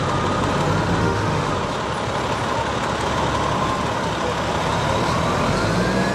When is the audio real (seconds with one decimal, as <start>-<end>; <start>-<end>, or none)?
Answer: 0.0-1.0; 1.5-6.1